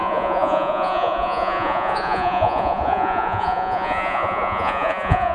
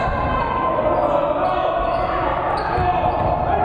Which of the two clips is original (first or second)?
second